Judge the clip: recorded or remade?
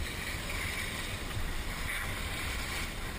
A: remade